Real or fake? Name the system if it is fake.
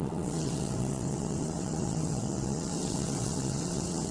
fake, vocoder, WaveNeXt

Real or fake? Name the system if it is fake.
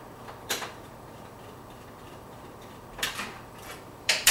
fake, vocoder, BigVGAN v2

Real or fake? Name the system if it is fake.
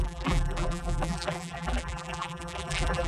fake, vocoder, BigVGAN v2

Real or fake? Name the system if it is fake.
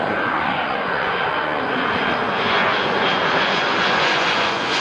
fake, vocoder, Vocos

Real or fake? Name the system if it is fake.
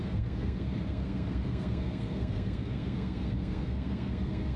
fake, codec, SNAC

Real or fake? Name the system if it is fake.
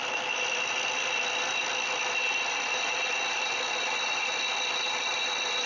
fake, vocoder, BigVGAN v2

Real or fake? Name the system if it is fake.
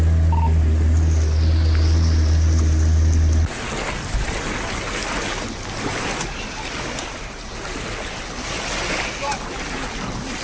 real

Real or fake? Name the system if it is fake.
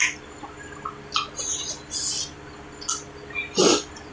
real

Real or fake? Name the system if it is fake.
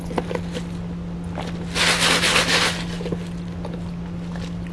real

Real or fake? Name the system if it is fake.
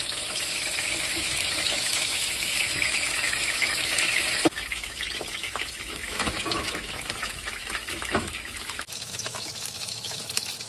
fake, autoencoder, DAC-VAE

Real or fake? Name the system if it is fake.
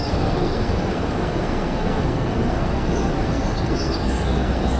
fake, codec, SNAC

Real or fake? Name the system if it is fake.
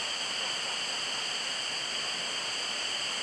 real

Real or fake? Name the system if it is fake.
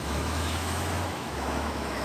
fake, autoencoder, DAC-VAE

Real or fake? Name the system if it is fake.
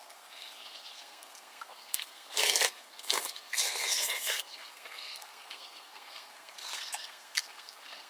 fake, codec, SNAC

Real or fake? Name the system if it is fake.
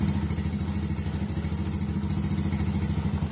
real